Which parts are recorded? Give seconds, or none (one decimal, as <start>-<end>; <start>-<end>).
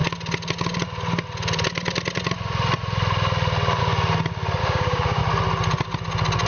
0.0-4.6; 5.2-6.5